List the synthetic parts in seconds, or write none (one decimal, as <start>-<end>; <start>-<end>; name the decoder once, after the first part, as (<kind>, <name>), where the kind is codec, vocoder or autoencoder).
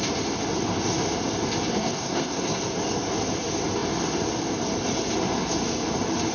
1.7-2.6 (codec, SNAC)